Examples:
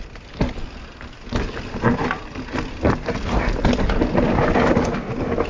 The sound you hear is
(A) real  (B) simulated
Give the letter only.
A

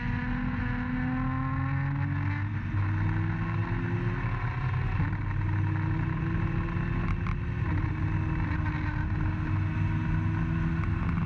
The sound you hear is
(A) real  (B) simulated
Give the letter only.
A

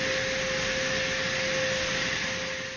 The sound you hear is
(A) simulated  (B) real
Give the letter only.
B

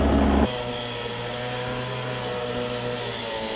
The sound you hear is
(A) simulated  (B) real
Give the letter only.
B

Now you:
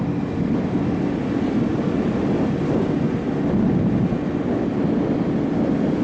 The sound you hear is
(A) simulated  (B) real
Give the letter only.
B